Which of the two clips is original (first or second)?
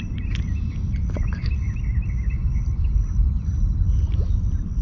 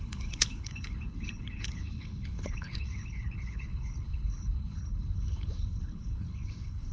first